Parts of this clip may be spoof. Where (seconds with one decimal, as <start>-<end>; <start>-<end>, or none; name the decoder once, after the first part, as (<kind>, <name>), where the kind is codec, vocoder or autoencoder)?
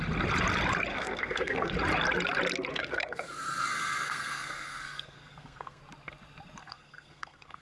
0.9-1.7 (codec, SNAC); 2.7-5.8; 6.6-7.6